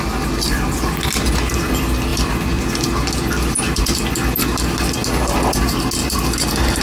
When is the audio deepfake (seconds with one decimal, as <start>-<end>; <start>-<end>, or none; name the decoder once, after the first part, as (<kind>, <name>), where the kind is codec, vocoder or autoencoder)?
none